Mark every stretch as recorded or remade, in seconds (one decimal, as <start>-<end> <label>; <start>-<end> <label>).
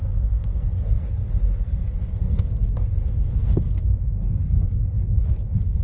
0.0-5.8 remade